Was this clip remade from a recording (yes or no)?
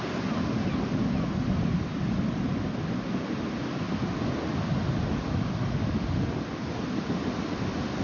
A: no